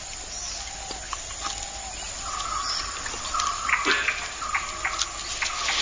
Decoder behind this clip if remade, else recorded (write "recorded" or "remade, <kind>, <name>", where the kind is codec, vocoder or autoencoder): recorded